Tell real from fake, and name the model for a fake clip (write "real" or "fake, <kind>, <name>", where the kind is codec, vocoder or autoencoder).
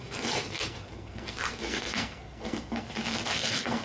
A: fake, codec, SNAC